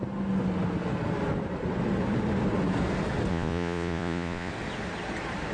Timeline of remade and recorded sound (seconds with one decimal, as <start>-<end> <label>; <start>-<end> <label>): 0.0-3.3 recorded; 3.3-4.5 remade; 4.5-5.5 recorded